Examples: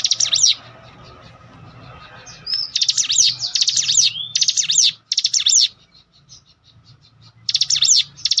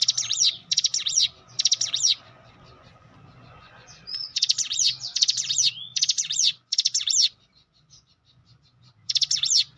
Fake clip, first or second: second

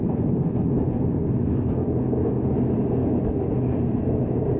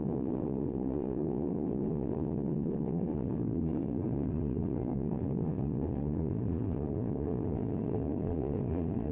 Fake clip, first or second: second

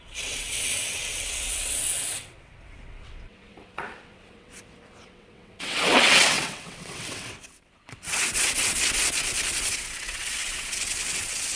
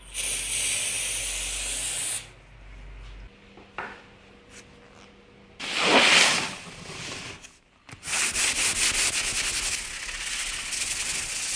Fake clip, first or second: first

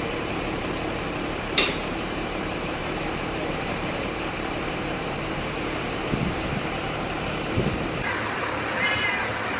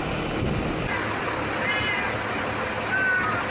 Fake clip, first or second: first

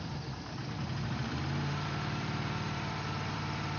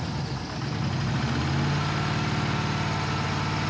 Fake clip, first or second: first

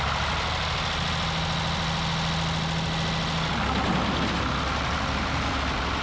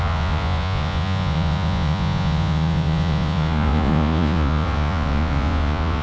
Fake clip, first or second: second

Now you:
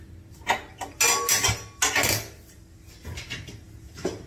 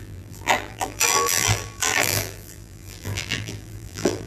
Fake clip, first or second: second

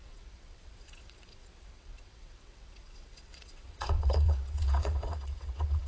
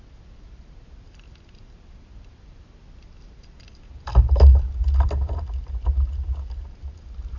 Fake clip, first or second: first